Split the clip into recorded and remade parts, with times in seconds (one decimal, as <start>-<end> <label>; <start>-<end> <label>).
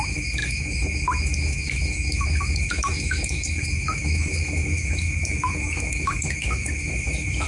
0.0-7.5 remade